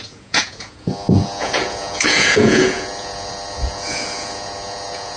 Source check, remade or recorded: remade